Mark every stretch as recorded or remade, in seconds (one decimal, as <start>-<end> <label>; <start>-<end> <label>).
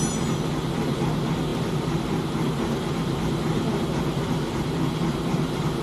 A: 0.0-5.8 recorded